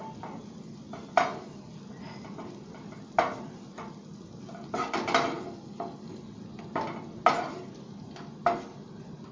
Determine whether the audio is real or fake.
real